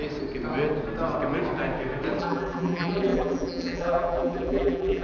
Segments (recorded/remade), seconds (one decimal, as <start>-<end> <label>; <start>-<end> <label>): 0.0-2.2 recorded; 2.2-5.0 remade